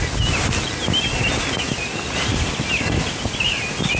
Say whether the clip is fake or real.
real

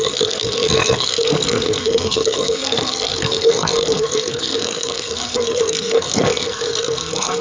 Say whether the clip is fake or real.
fake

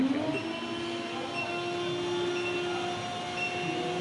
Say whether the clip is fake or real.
real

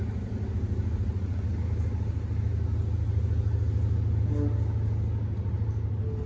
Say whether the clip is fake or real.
real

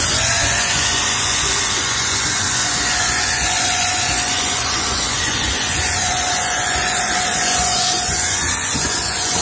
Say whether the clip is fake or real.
fake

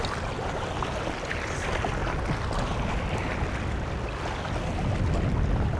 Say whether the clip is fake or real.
real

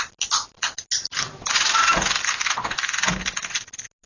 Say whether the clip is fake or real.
real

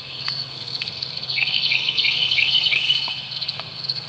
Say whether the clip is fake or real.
fake